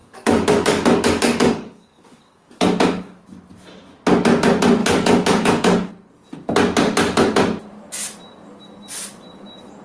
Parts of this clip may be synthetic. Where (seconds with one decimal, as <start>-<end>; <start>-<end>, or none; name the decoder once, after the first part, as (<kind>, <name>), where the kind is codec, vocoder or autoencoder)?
0.0-3.2 (codec, DAC); 4.8-5.9